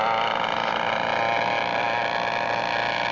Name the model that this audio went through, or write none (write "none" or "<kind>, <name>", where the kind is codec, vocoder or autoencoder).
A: none